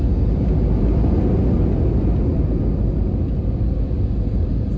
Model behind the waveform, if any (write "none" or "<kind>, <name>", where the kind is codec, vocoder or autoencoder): none